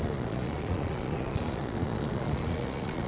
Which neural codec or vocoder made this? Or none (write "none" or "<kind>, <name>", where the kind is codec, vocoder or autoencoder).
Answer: vocoder, Vocos